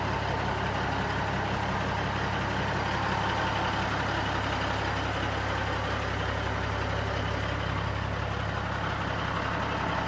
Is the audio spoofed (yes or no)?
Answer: no